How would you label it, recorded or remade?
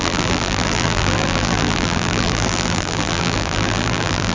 remade